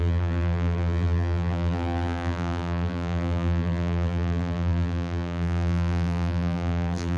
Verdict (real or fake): fake